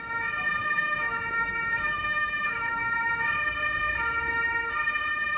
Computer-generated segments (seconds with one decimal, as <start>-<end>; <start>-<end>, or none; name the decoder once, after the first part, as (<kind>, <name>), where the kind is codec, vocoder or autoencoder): 0.6-3.1 (autoencoder, DAC-VAE)